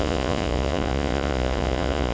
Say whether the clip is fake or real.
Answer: fake